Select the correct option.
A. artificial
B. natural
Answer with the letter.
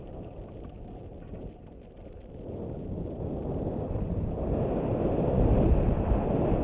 B